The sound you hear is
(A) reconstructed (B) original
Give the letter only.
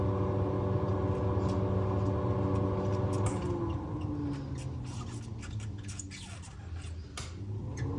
B